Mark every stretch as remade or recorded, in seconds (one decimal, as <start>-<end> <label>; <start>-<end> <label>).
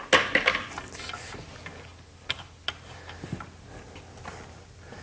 0.0-5.0 recorded